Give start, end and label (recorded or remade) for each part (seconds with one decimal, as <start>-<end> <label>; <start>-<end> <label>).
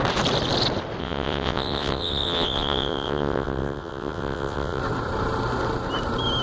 0.0-1.0 recorded; 1.0-4.8 remade; 4.8-6.4 recorded